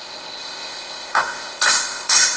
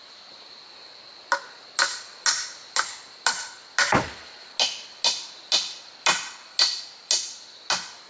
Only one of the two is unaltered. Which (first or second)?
second